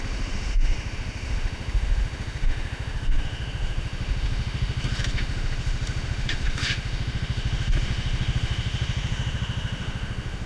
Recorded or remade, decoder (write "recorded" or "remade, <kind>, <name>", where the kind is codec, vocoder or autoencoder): remade, autoencoder, DAC-VAE